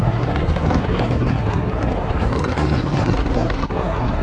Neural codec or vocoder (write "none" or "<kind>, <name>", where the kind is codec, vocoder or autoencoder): codec, SNAC